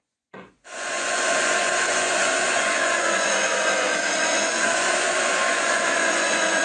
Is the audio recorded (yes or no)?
no